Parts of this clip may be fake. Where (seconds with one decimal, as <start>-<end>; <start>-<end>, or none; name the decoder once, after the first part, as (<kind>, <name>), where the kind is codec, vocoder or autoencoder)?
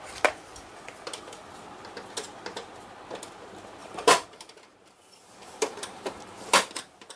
3.8-6.3 (vocoder, BigVGAN v2)